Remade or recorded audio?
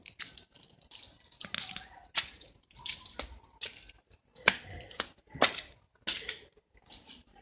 recorded